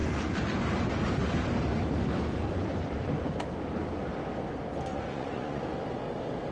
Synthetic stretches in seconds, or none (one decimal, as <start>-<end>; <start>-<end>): 4.9-5.6